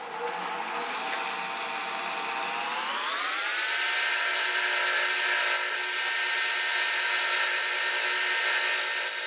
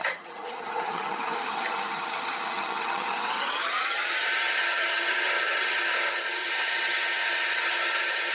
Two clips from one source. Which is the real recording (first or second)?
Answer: first